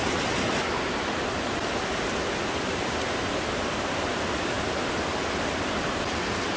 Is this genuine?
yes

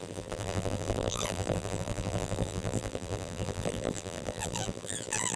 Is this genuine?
no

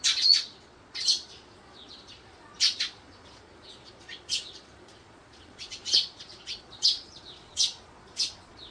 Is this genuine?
no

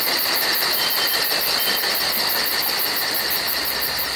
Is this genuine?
yes